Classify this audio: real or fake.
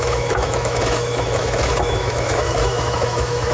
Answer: fake